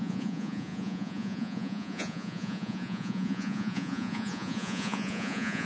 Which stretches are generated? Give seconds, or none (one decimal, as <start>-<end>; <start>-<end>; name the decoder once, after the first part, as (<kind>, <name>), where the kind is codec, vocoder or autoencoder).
0.0-5.7 (vocoder, Vocos)